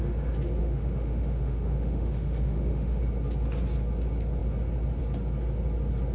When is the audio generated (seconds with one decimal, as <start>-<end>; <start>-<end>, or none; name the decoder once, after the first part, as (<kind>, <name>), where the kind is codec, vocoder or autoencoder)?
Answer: 0.6-3.0 (autoencoder, DAC-VAE)